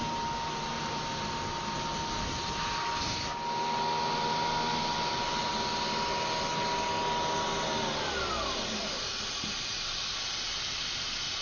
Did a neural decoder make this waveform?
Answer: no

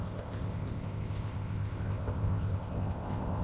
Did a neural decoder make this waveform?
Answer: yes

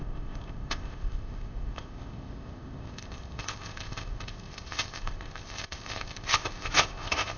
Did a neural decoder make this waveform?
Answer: yes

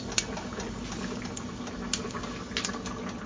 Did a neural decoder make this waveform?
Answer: no